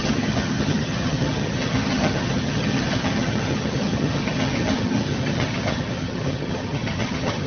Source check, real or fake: fake